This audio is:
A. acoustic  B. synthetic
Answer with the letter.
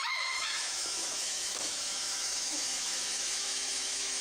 B